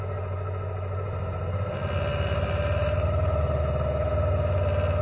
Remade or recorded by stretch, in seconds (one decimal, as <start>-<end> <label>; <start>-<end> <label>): 0.0-2.1 recorded; 2.1-3.6 remade; 3.6-5.0 recorded

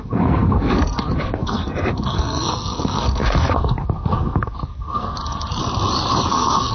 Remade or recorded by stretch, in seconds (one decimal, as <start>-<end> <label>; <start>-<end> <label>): 0.0-5.6 remade; 5.6-6.3 recorded; 6.3-6.7 remade